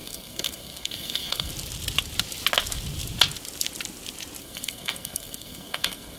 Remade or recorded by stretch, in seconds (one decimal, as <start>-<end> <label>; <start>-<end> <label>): 0.0-1.5 remade; 1.5-4.4 recorded; 4.4-6.2 remade

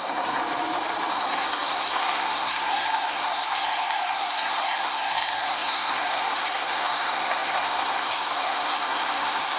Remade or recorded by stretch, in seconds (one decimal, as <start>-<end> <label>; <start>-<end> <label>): 0.0-0.4 remade; 0.4-1.1 recorded; 1.1-9.6 remade

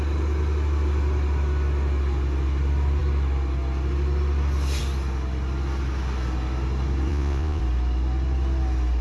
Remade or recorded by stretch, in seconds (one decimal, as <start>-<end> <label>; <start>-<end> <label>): 0.0-7.1 recorded; 7.1-7.6 remade; 7.6-9.0 recorded

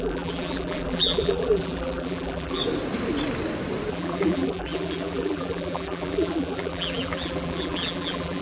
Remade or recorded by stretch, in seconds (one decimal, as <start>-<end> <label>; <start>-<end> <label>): 0.0-2.6 remade; 2.6-3.9 recorded; 3.9-8.4 remade

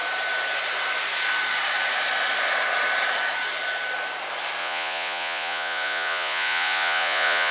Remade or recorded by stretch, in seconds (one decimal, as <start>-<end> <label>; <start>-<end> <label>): 0.0-4.6 recorded; 4.6-7.5 remade

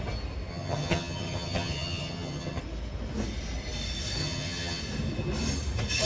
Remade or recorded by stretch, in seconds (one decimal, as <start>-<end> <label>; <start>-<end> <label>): 0.0-0.5 recorded; 0.5-2.6 remade; 2.6-4.2 recorded; 4.2-4.8 remade; 4.8-6.1 recorded

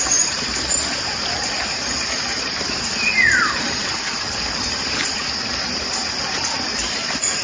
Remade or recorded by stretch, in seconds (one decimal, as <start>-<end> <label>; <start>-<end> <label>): 0.0-5.2 remade; 5.2-6.3 recorded; 6.3-7.4 remade

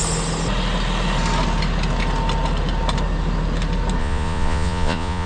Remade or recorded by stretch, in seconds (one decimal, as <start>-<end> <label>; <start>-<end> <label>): 0.0-4.0 recorded; 4.0-5.3 remade